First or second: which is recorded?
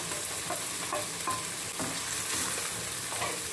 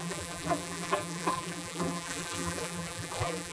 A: first